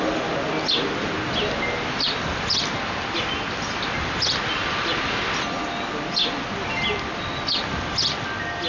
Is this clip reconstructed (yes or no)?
no